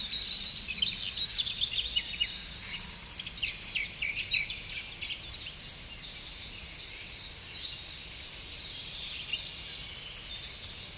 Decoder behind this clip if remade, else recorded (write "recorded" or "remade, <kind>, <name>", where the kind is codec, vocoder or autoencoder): recorded